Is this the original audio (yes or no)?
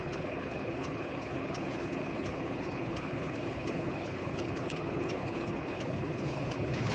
no